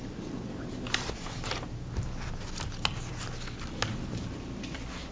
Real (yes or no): yes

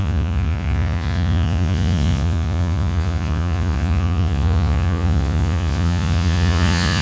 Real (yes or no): no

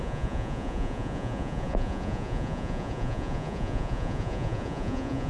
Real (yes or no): no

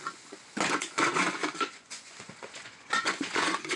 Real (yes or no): no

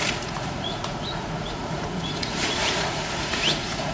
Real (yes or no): no